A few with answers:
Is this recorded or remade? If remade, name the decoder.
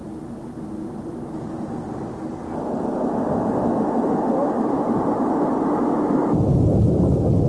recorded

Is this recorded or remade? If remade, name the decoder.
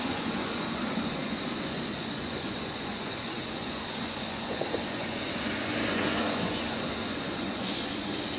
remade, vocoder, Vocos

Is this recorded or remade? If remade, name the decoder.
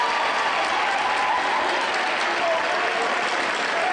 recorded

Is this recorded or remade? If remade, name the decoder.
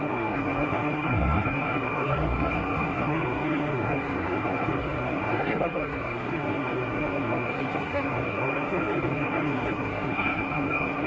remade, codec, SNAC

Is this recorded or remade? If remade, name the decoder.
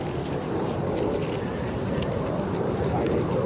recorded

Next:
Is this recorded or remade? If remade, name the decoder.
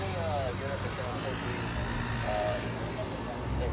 recorded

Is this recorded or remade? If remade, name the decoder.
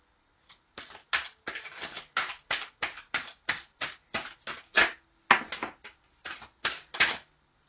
recorded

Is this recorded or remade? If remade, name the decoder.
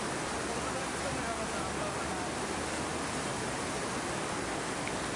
recorded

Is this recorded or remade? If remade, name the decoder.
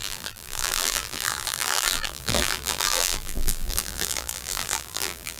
remade, vocoder, BigVGAN v2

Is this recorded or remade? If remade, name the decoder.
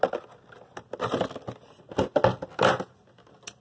recorded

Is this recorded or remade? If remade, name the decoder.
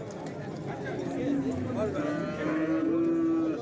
recorded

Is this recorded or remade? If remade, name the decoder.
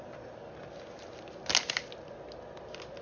recorded